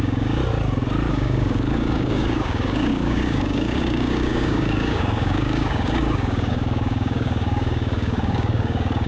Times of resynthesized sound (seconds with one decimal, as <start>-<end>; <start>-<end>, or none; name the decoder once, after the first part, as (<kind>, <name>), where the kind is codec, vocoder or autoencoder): 0.0-0.4 (codec, DAC); 1.1-9.1